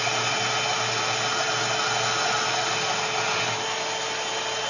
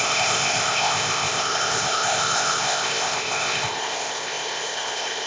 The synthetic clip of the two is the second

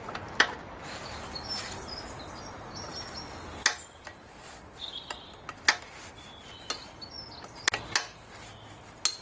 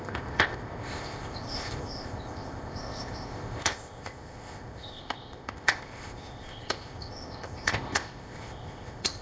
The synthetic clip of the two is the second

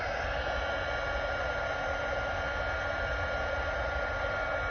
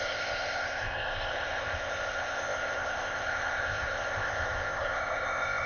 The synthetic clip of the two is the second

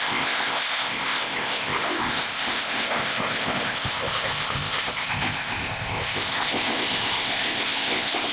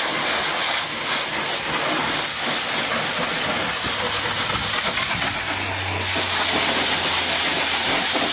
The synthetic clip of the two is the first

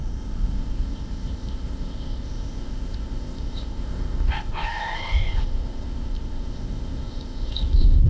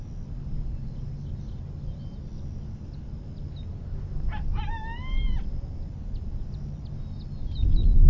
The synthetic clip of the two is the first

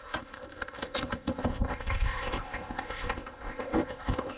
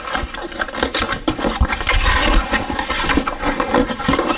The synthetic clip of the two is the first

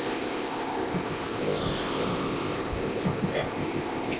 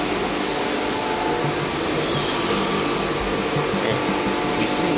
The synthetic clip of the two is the first